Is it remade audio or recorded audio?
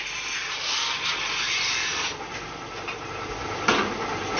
recorded